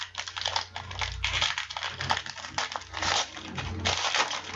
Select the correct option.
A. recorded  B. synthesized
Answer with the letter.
A